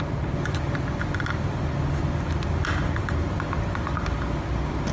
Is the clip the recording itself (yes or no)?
yes